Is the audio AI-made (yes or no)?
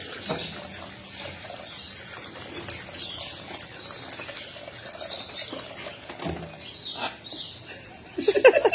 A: no